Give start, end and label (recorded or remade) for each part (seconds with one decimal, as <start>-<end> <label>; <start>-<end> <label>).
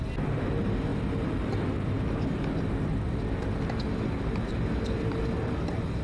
0.0-6.0 recorded